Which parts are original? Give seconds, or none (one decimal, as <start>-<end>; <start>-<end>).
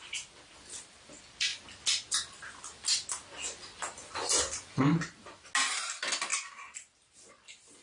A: 0.0-7.8